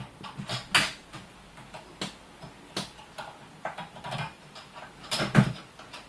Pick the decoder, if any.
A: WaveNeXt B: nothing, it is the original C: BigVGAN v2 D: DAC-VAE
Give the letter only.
B